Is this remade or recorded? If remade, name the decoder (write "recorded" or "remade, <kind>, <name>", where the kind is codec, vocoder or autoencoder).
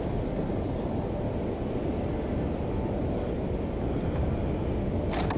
recorded